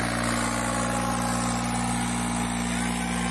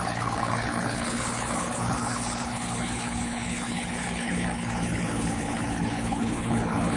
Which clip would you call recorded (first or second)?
first